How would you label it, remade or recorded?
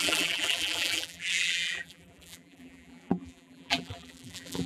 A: remade